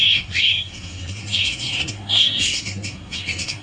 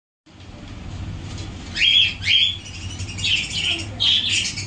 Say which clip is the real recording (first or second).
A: second